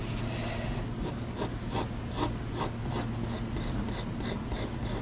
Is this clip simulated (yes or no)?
no